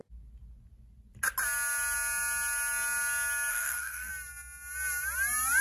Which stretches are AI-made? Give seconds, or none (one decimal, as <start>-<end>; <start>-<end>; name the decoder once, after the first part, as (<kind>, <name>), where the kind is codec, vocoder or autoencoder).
3.5-4.1 (codec, SNAC)